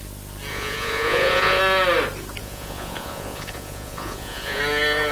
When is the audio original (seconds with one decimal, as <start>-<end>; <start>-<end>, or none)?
0.0-0.5; 1.6-2.4; 4.6-5.1